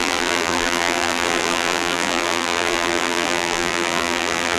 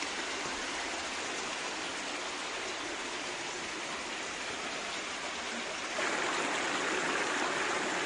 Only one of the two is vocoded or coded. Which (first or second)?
first